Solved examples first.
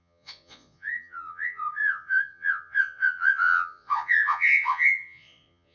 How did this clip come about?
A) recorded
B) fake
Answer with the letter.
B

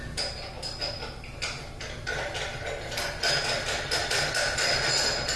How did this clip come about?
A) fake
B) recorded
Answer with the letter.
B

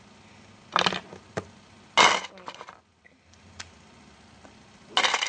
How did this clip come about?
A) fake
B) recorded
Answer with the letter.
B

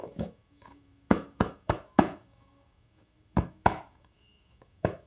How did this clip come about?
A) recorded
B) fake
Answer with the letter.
B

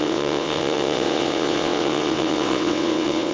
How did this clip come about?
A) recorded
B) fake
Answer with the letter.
B